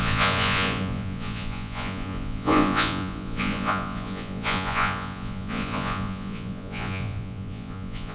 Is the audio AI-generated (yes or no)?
yes